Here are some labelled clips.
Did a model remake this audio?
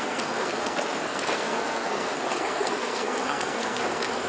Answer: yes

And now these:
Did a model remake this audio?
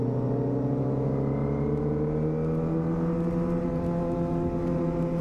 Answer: no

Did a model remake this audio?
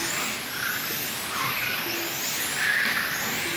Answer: no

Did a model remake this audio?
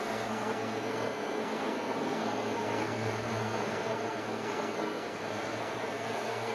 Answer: yes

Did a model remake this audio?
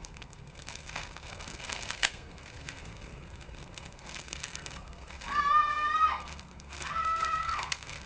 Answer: yes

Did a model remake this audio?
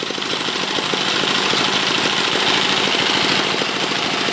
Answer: no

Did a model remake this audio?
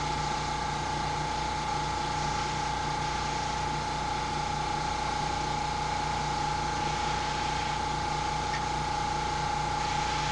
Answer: no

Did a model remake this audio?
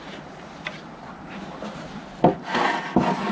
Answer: no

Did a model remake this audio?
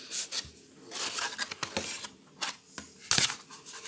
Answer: no